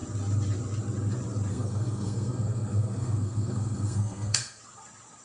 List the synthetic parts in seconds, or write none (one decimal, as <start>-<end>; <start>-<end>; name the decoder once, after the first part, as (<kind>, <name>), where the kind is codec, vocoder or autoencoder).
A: 1.5-4.6 (codec, SNAC)